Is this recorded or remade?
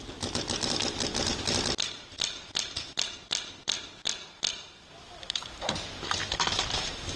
recorded